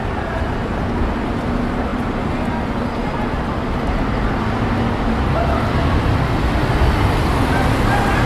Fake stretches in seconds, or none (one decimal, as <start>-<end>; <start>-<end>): none